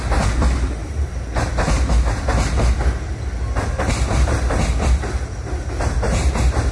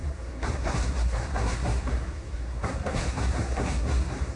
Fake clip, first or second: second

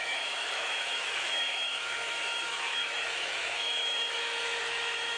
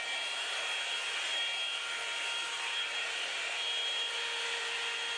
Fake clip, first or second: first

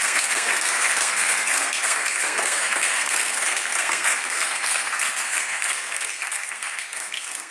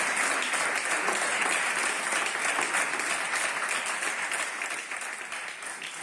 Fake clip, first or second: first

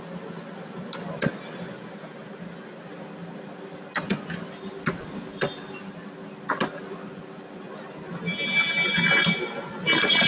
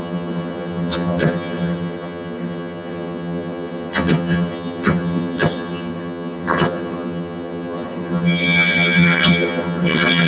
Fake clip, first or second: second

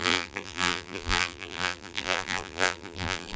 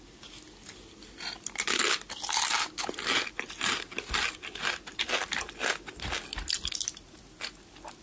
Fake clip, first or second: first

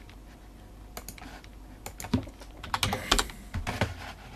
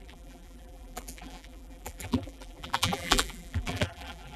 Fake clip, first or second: second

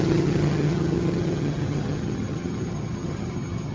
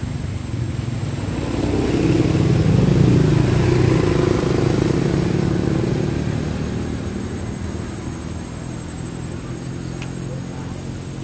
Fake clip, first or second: first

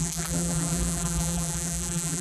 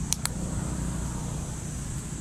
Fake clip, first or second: first